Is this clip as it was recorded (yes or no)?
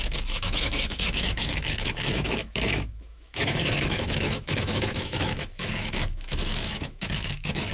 no